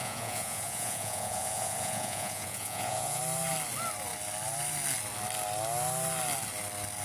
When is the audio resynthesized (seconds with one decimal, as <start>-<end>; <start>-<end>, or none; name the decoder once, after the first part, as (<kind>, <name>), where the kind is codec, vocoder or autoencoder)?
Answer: 0.0-3.2 (vocoder, Vocos)